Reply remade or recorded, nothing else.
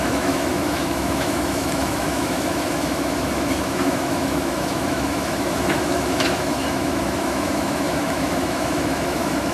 remade